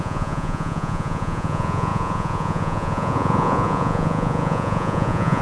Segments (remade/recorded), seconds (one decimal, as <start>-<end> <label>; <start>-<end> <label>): 0.0-5.4 remade